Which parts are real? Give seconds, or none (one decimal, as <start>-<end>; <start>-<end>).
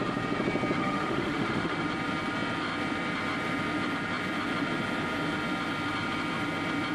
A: 0.0-0.8; 1.8-6.9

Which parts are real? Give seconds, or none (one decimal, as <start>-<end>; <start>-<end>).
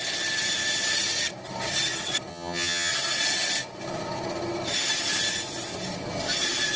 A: 0.0-2.3; 2.9-6.8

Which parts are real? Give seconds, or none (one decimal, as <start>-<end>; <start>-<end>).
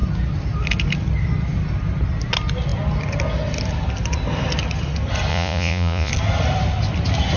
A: 0.0-5.3; 6.1-7.4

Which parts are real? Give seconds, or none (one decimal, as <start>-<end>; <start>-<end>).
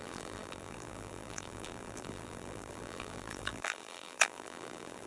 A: none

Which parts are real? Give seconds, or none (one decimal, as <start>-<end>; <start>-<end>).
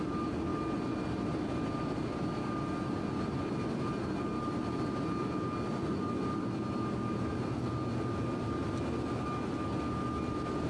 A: 0.0-10.7